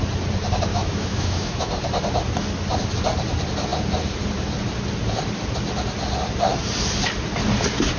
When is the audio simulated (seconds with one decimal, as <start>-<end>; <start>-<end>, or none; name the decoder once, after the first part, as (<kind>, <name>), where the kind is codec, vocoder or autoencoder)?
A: 0.7-1.7 (autoencoder, DAC-VAE)